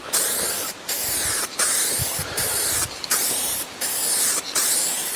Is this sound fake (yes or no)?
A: yes